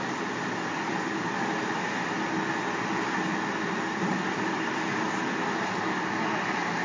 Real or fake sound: real